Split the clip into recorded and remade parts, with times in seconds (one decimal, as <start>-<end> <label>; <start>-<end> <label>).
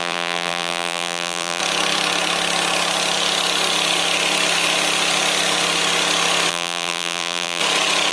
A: 0.0-1.6 remade; 1.6-6.5 recorded; 6.5-7.6 remade; 7.6-8.1 recorded